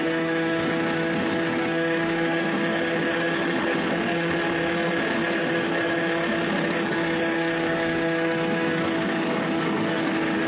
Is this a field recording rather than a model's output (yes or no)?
no